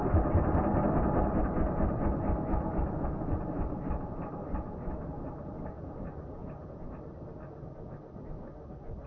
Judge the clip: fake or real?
real